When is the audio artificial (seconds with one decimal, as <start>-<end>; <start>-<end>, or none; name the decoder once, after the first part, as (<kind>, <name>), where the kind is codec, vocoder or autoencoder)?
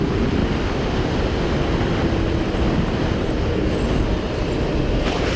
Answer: none